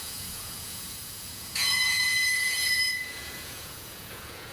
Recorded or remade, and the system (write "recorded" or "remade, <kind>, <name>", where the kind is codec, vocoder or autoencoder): remade, vocoder, Vocos